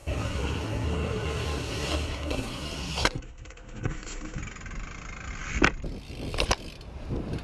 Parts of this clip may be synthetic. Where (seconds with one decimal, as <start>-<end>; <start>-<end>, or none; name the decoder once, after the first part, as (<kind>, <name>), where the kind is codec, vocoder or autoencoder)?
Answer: 0.0-4.4 (codec, SNAC)